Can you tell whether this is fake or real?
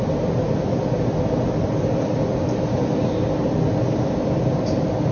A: real